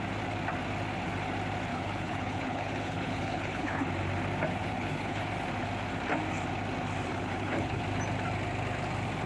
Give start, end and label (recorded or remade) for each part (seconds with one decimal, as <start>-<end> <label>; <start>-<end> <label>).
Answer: 0.0-1.7 recorded; 1.7-3.9 remade; 3.9-4.6 recorded; 4.6-5.3 remade; 5.3-7.1 recorded; 7.1-7.8 remade; 7.8-9.3 recorded